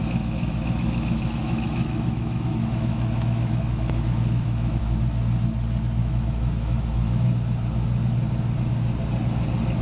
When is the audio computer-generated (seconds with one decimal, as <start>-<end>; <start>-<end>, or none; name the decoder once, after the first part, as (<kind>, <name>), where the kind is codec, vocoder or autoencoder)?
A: 0.0-4.8 (autoencoder, DAC-VAE); 6.0-7.3